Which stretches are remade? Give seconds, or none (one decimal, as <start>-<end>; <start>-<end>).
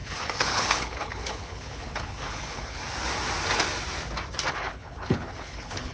0.0-2.8; 4.5-5.9